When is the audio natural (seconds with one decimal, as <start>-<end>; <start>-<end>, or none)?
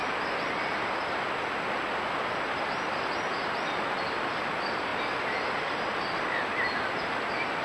0.0-7.6